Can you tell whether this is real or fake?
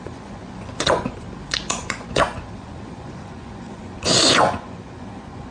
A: fake